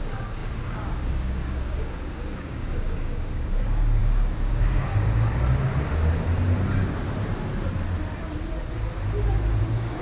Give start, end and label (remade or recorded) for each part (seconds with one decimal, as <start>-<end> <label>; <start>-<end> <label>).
0.0-4.9 remade; 4.9-9.6 recorded; 9.6-10.0 remade